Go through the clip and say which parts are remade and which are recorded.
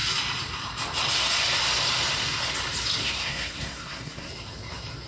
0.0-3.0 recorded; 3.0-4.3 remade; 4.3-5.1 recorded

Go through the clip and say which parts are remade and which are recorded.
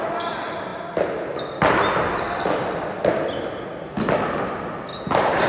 0.0-5.5 recorded